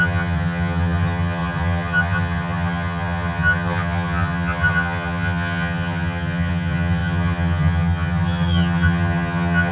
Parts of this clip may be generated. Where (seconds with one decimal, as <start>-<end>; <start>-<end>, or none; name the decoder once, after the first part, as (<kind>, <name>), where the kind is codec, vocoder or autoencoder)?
0.0-9.7 (vocoder, HiFi-GAN)